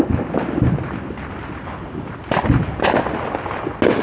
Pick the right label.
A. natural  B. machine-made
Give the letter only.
A